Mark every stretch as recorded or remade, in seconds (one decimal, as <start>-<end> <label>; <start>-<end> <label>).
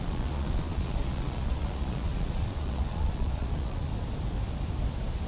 0.0-3.9 remade; 3.9-5.3 recorded